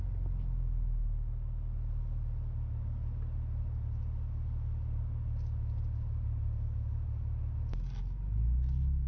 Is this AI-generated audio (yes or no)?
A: no